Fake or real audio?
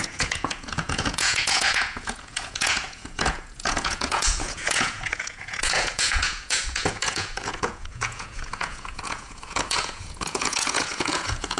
fake